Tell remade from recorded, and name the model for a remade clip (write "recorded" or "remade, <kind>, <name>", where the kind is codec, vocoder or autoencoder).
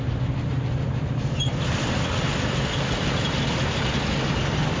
recorded